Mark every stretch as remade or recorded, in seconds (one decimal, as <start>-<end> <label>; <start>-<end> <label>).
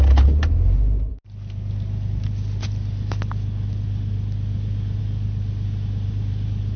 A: 0.0-6.8 recorded